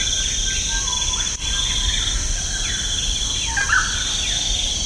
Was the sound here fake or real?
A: real